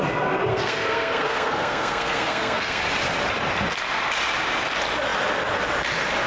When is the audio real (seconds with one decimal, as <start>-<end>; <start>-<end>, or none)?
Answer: 0.0-0.5; 2.8-6.3